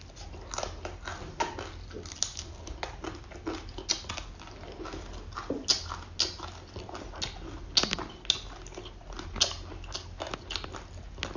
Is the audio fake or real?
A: real